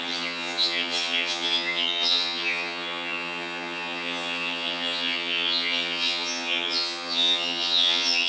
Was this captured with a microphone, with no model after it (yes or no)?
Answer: no